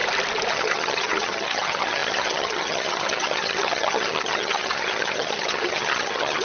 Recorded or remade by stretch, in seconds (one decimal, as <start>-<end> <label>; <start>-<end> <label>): 0.0-0.5 recorded; 0.5-6.4 remade